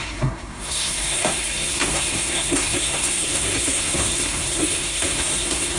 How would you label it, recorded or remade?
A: remade